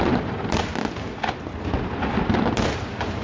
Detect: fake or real real